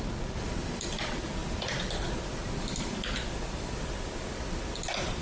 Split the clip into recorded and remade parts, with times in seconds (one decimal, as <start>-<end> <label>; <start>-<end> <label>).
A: 0.0-5.2 recorded